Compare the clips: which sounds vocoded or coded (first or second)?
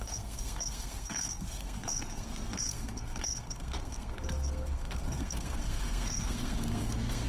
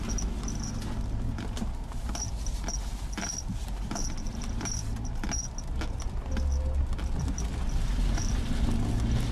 first